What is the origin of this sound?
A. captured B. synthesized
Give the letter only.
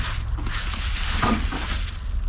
A